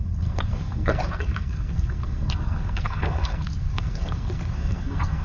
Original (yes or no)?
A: no